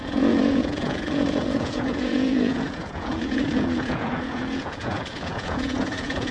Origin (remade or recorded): remade